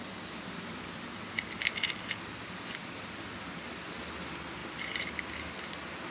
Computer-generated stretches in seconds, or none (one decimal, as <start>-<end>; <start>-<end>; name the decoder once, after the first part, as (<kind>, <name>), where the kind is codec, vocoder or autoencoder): 2.8-3.6 (vocoder, BigVGAN v2); 4.6-5.5